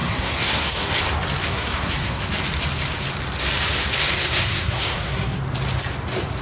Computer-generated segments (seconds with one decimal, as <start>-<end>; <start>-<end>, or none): 0.0-0.9; 1.5-2.2; 4.2-5.4